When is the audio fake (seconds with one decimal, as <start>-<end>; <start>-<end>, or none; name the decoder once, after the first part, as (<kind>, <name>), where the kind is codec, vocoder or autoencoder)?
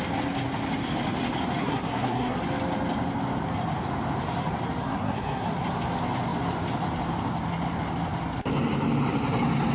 1.6-2.4 (codec, SNAC); 4.8-5.5